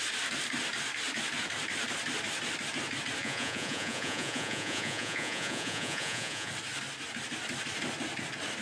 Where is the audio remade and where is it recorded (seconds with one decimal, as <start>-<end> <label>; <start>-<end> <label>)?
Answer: 0.0-3.2 recorded; 3.2-6.5 remade; 6.5-8.6 recorded